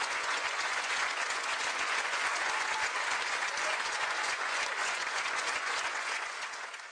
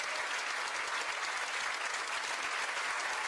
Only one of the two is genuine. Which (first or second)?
second